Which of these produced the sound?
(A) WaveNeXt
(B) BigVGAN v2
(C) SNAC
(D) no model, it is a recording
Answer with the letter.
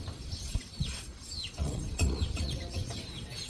A